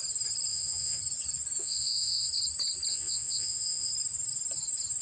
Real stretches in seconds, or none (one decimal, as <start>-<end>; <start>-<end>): 0.0-0.5; 1.0-1.6; 2.3-2.9; 3.9-5.0